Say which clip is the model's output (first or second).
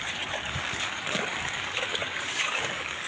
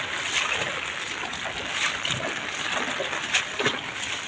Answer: first